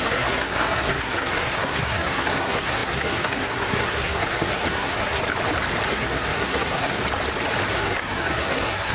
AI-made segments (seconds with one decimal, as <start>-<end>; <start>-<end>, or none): 0.0-5.2; 5.9-7.0; 7.7-8.9